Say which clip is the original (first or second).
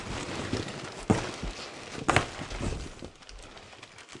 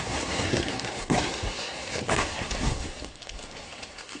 first